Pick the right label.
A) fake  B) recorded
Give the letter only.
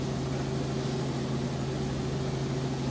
B